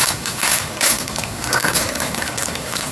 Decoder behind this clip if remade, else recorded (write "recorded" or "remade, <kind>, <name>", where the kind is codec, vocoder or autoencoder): remade, codec, SNAC